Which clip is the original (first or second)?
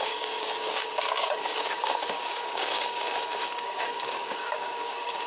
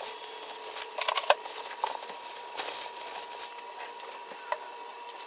second